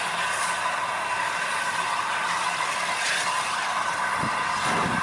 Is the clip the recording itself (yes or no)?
yes